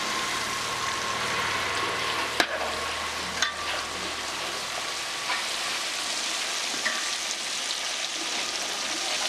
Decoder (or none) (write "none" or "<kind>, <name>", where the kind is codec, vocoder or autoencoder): none